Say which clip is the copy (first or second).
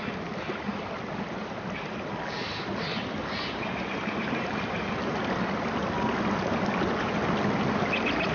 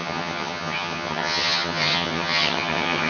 second